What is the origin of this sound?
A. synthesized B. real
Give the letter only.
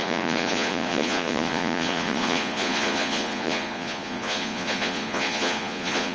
A